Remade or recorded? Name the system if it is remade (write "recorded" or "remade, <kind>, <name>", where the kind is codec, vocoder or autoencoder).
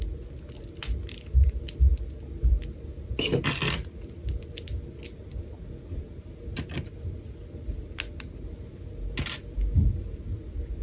recorded